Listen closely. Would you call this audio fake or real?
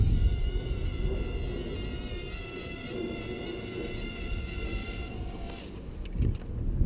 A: real